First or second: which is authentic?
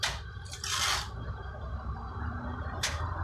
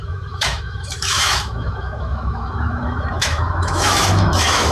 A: first